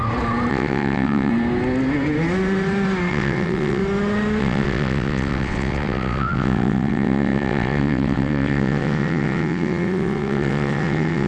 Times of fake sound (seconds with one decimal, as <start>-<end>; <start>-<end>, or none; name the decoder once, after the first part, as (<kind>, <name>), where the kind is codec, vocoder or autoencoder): 0.5-1.3 (vocoder, WaveNeXt); 3.1-3.8; 4.4-11.3

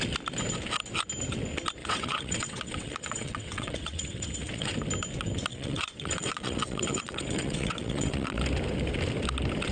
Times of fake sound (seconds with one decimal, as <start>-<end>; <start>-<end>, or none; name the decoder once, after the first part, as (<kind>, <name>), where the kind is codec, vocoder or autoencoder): 1.8-4.7 (vocoder, WaveNeXt); 5.5-8.4

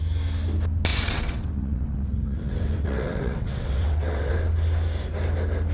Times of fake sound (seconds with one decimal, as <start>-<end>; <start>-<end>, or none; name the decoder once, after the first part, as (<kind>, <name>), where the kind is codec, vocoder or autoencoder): 0.9-4.3 (vocoder, WaveNeXt)

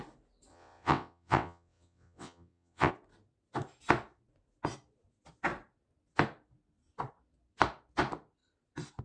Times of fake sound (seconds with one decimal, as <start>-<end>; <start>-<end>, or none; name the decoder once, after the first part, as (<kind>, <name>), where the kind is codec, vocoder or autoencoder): 0.5-2.9 (vocoder, WaveNeXt)